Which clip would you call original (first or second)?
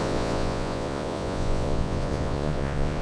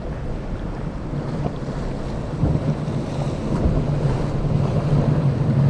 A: second